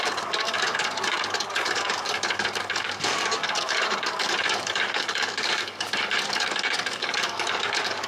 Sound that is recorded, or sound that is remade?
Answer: remade